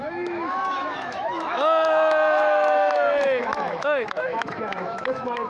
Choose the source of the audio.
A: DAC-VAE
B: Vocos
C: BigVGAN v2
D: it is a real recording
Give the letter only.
A